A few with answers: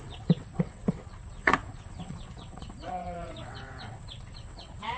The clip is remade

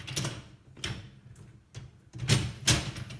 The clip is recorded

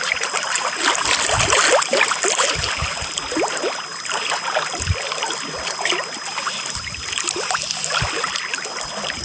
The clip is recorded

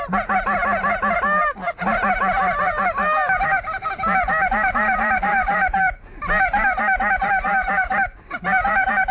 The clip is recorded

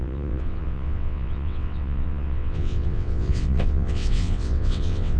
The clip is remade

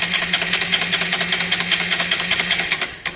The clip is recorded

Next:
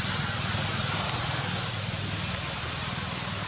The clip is recorded